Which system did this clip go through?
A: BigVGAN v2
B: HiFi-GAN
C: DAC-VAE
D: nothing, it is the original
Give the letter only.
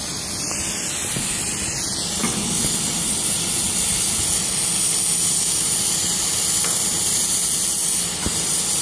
D